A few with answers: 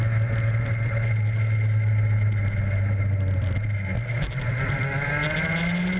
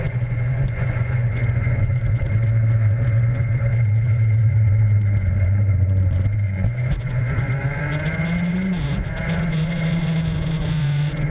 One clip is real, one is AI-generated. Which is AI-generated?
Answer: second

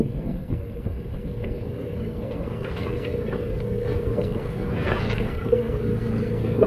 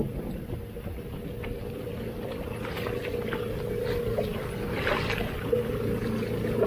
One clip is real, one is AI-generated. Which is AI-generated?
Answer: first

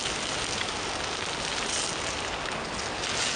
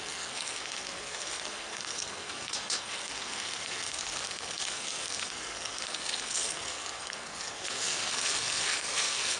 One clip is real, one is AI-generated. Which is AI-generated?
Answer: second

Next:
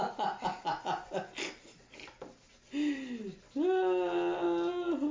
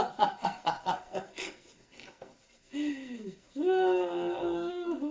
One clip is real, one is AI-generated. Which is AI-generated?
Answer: second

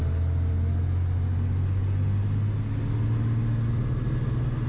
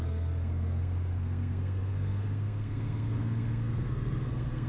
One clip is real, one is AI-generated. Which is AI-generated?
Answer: second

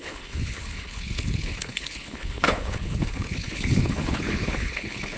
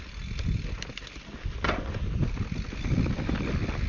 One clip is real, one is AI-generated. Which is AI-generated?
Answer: first